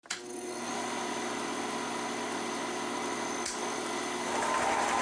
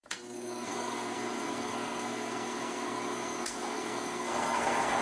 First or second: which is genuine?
first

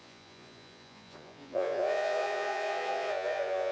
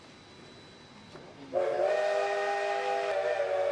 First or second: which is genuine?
second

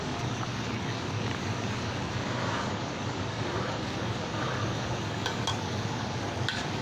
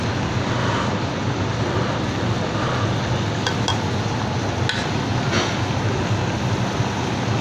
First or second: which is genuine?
second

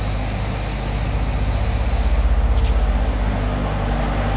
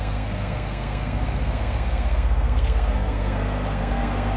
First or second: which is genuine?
first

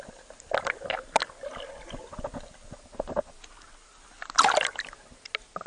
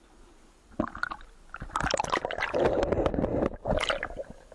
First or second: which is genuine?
first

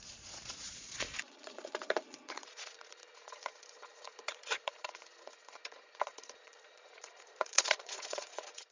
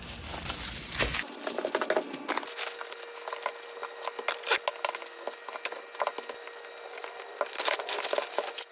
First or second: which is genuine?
second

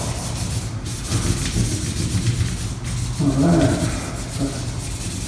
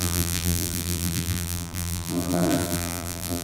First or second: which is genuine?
first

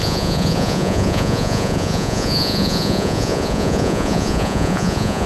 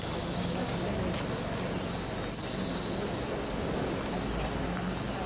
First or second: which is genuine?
second